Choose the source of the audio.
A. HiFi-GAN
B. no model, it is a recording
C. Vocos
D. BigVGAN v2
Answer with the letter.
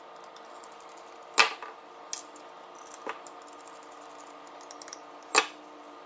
B